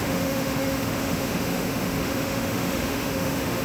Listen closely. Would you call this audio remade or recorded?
remade